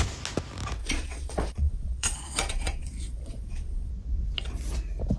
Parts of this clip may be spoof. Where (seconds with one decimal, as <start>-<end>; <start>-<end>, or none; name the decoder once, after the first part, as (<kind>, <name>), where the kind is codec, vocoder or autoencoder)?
0.8-3.9 (vocoder, Vocos)